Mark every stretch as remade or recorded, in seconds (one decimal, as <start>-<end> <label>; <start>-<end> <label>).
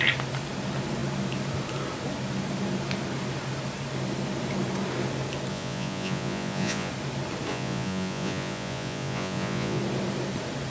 0.0-5.5 recorded; 5.5-6.9 remade; 6.9-7.5 recorded; 7.5-9.8 remade; 9.8-10.7 recorded